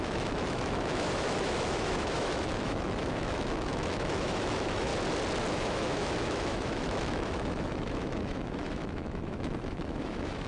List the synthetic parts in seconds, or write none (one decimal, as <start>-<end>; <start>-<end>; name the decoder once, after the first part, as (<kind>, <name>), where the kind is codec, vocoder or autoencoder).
0.0-4.9 (autoencoder, DAC-VAE); 5.5-10.5